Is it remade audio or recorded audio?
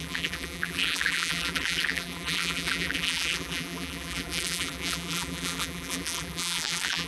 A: remade